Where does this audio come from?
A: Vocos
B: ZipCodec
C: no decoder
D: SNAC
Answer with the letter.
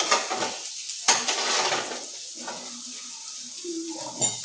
C